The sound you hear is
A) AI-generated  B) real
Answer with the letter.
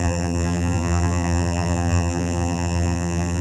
A